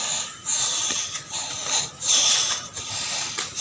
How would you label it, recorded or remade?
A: recorded